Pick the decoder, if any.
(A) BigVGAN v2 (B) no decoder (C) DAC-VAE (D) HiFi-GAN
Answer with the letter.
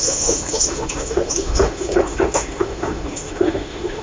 C